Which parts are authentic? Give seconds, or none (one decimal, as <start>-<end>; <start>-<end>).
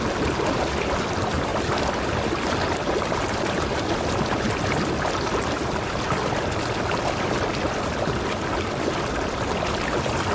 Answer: 0.0-10.3